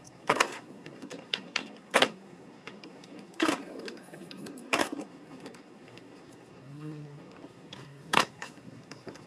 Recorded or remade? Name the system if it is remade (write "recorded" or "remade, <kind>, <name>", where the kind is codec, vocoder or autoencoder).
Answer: remade, codec, SNAC